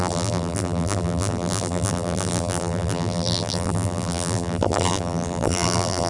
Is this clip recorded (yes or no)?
no